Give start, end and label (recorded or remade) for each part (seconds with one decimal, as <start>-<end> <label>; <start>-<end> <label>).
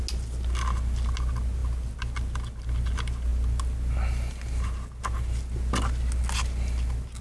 0.0-7.2 recorded